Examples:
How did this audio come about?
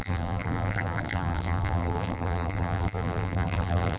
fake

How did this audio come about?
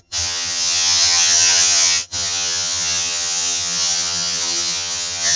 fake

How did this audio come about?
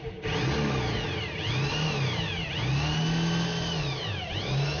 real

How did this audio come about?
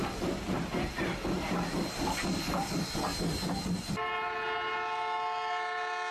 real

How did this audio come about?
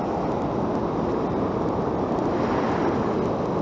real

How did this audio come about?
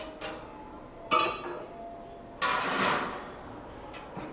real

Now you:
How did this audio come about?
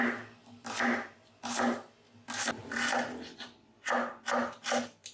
real